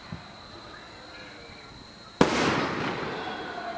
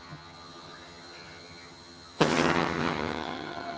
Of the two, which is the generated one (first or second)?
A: second